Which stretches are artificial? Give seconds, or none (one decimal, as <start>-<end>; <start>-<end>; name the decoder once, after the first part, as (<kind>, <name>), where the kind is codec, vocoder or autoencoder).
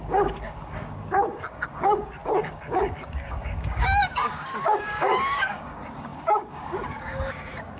0.0-7.8 (codec, DAC)